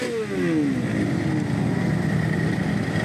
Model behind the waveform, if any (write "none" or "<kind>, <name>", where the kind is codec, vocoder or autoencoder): none